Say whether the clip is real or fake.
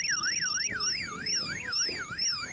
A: real